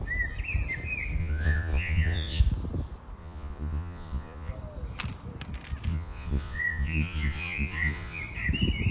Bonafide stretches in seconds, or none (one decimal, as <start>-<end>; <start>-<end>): 0.0-1.2; 2.4-3.2; 4.5-5.9; 8.2-8.9